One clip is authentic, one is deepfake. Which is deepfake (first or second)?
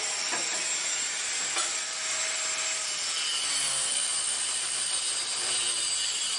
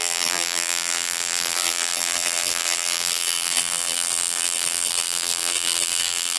second